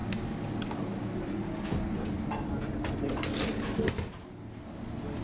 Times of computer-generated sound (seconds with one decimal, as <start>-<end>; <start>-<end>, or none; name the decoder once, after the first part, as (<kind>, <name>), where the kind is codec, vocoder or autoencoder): none